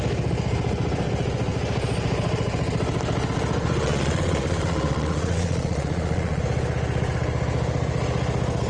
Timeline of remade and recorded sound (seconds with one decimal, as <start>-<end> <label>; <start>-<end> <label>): 0.0-3.8 recorded; 3.8-6.4 remade; 6.4-8.7 recorded